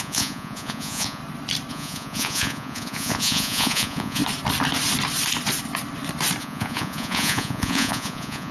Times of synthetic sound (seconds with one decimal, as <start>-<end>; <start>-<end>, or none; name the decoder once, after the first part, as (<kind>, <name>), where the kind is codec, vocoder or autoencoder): 0.0-1.2 (vocoder, Vocos); 1.7-4.2; 6.4-8.5